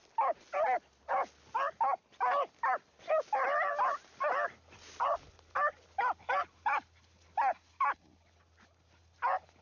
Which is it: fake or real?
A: real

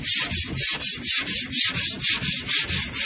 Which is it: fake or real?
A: real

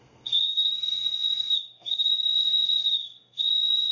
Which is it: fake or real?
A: fake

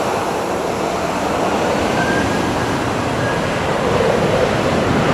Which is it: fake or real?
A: fake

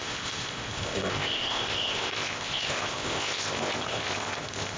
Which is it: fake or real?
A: fake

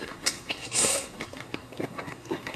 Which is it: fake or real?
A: fake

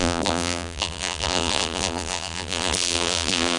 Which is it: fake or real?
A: fake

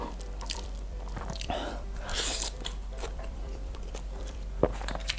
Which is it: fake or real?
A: fake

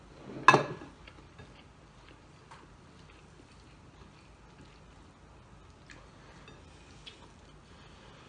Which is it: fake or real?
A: real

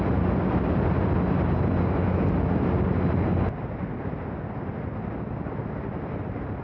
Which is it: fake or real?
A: real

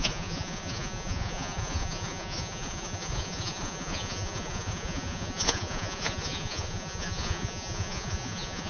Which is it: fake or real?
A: fake